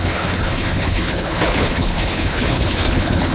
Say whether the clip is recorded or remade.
remade